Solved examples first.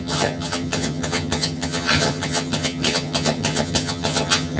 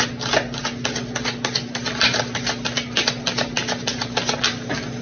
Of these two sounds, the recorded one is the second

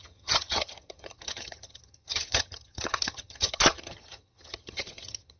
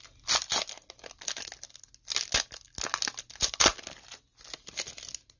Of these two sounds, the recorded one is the second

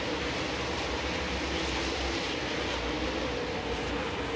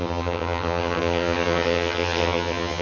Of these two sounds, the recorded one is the first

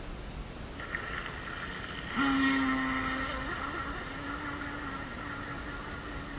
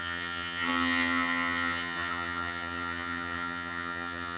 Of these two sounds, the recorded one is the first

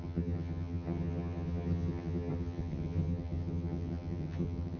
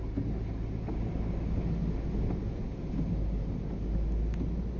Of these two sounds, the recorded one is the second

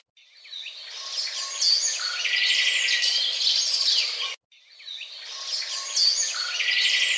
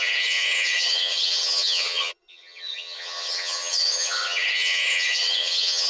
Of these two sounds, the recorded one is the first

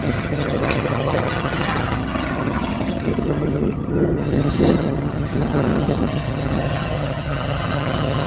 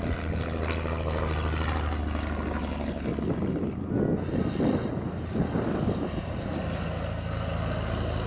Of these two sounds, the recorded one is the second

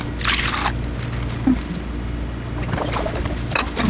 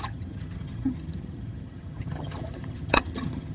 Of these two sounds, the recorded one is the first